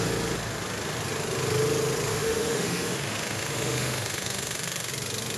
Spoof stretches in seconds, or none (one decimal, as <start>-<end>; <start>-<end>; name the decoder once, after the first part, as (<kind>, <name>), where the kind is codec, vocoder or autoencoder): 2.1-4.9 (autoencoder, DAC-VAE)